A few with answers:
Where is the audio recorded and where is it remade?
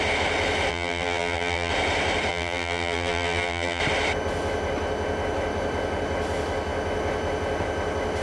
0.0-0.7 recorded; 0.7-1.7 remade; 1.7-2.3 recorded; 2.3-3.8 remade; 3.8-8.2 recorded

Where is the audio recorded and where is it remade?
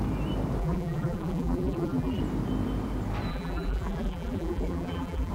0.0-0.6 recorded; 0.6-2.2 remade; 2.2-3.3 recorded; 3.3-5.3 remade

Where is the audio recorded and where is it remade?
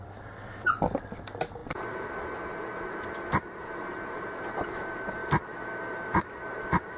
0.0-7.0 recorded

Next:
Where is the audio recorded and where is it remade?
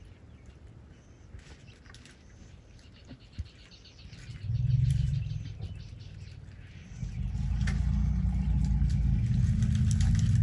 0.0-3.0 recorded; 3.0-3.7 remade; 3.7-10.4 recorded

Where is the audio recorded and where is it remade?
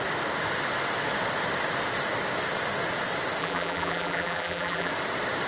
0.0-3.4 recorded; 3.4-4.9 remade; 4.9-5.5 recorded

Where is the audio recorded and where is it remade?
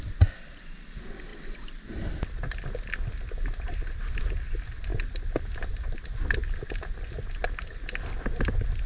0.0-8.9 recorded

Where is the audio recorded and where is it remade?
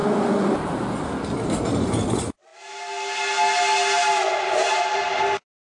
0.0-5.8 recorded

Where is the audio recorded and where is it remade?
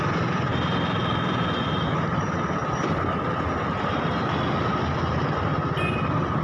0.0-6.4 recorded